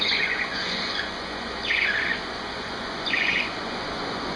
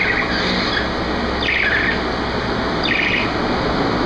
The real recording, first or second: second